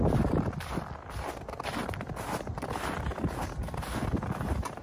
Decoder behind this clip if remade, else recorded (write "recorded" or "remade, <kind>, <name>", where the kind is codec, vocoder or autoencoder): recorded